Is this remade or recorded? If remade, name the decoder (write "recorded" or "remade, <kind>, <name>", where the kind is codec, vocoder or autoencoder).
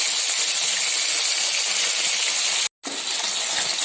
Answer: recorded